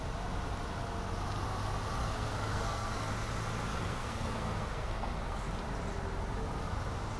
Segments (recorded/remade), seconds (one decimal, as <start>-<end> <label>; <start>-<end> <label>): 0.0-2.0 recorded; 2.0-3.1 remade; 3.1-3.7 recorded; 3.7-5.5 remade; 5.5-7.2 recorded